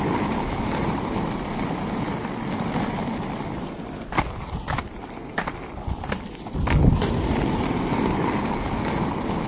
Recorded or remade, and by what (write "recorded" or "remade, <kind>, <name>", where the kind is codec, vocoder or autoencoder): recorded